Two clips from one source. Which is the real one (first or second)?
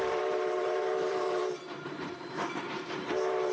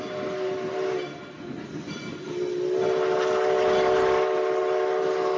second